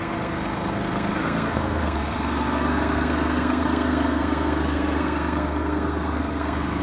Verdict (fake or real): fake